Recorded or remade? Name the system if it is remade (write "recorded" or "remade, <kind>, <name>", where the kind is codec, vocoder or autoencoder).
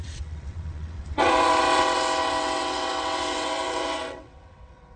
remade, vocoder, WaveNeXt